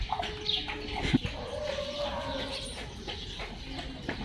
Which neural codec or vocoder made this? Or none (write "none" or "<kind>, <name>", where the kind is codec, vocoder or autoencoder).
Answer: none